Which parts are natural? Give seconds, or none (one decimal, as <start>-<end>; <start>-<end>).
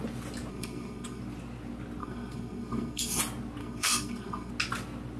0.0-0.5; 1.2-2.0; 3.2-3.6; 4.5-5.2